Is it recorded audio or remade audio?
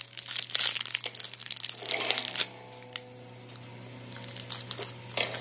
recorded